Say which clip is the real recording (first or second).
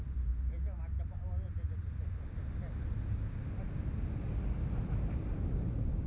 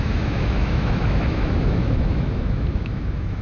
first